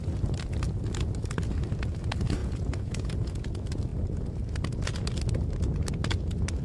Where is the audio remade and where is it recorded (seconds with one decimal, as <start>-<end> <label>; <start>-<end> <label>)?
0.0-2.4 recorded; 2.4-3.5 remade; 3.5-6.6 recorded